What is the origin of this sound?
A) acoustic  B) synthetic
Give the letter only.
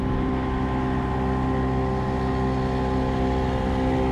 A